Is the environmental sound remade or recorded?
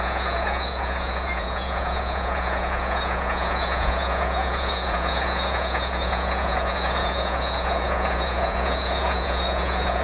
remade